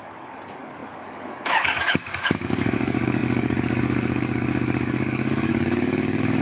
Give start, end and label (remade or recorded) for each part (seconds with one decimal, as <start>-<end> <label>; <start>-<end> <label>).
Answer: 0.0-6.4 remade